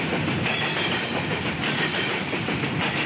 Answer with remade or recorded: recorded